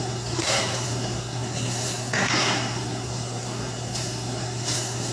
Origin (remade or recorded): remade